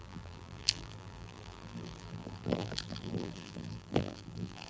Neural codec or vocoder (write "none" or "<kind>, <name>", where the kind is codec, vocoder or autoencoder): vocoder, BigVGAN v2